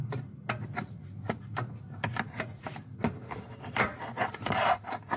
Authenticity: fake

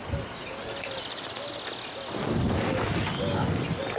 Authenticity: real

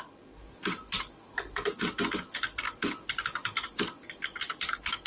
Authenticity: fake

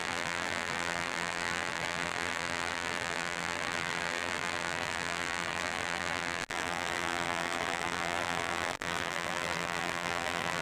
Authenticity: fake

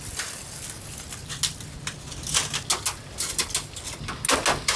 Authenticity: real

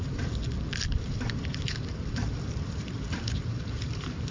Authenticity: fake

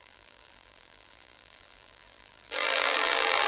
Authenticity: fake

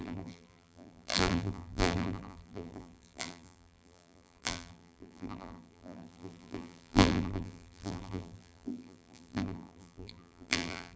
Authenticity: fake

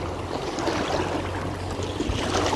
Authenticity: real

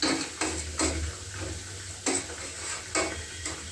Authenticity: real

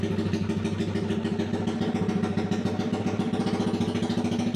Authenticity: real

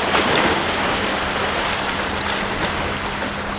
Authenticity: real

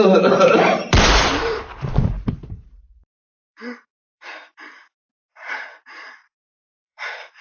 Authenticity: fake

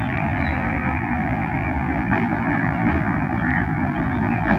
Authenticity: fake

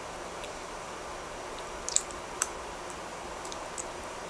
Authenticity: real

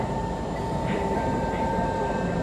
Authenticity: fake